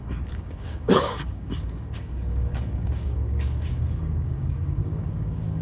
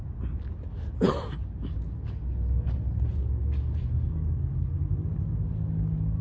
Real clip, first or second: second